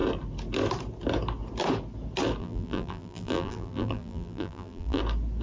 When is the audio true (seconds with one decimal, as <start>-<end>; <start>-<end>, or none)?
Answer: 0.0-2.4; 5.0-5.4